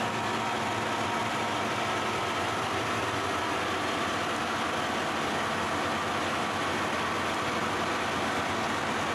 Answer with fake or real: real